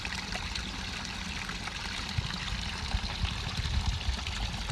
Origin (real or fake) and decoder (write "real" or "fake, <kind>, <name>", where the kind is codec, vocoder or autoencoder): real